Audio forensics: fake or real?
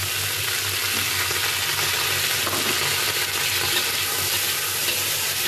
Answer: real